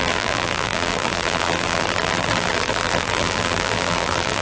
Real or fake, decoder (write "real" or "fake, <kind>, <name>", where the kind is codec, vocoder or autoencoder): fake, vocoder, BigVGAN v2